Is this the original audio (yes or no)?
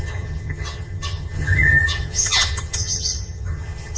no